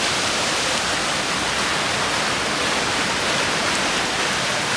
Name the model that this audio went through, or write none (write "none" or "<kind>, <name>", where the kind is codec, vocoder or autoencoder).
none